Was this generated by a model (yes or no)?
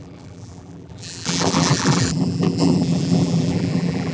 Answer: yes